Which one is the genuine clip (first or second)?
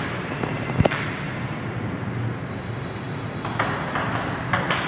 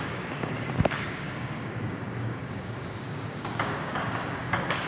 first